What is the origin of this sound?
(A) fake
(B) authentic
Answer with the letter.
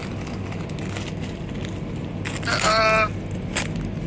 B